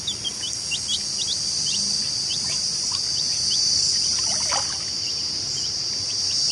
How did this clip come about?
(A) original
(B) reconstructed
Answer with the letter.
A